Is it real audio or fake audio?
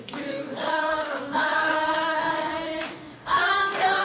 fake